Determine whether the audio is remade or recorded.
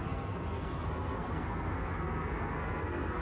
remade